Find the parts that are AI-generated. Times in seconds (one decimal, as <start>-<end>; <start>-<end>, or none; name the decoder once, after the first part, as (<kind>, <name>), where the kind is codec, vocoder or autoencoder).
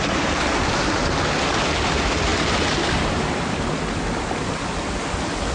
none